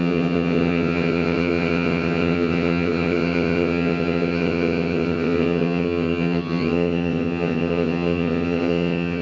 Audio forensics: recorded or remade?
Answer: remade